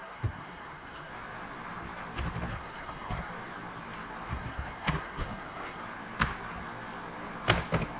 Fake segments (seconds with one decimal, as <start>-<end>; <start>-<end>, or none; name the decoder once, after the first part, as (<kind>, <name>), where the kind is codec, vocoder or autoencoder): 0.0-1.1 (codec, SNAC); 2.5-3.3; 4.3-5.8